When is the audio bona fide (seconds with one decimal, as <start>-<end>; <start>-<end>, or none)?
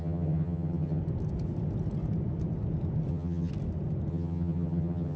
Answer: 1.0-3.1; 3.5-4.1